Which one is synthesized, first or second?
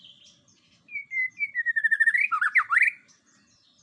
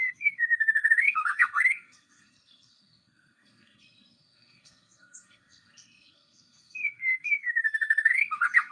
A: second